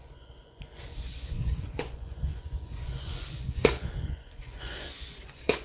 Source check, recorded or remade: remade